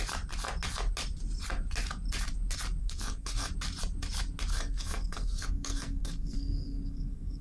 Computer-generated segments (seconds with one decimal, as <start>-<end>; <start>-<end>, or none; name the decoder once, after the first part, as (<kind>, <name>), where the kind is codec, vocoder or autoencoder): 2.8-3.5 (codec, SNAC); 4.5-7.4

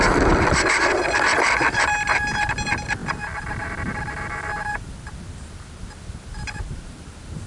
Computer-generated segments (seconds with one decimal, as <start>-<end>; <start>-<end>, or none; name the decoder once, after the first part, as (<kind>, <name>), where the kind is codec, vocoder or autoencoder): none